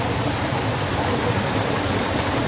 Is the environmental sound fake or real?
fake